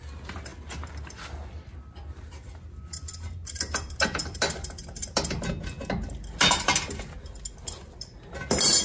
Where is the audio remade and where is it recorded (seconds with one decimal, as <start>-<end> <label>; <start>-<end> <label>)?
0.0-8.8 recorded